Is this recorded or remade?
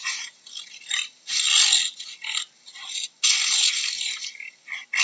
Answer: recorded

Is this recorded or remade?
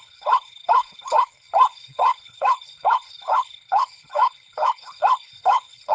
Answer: remade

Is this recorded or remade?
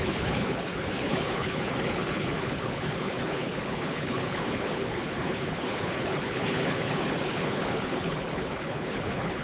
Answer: remade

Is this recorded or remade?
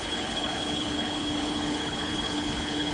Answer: remade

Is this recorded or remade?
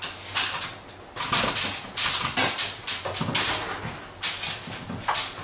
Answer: recorded